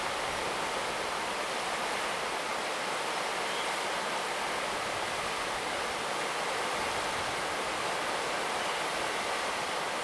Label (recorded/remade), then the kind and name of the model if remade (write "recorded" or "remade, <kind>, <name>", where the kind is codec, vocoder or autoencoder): recorded